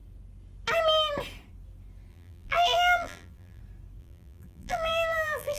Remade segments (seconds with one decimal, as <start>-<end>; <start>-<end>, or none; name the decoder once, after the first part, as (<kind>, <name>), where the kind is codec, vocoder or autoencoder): 2.1-3.6 (vocoder, BigVGAN v2); 4.0-5.6

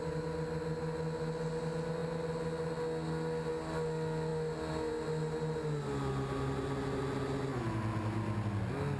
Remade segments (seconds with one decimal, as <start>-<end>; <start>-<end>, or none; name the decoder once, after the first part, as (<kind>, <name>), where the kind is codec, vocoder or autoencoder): none

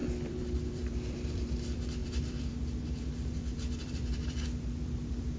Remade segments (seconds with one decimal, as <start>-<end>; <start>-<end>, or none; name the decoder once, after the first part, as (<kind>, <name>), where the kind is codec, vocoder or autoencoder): 0.0-5.4 (vocoder, BigVGAN v2)

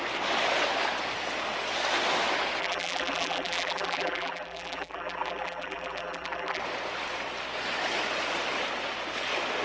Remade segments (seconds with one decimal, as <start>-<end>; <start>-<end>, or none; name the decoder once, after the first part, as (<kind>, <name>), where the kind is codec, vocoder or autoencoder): 2.6-6.6 (vocoder, BigVGAN v2)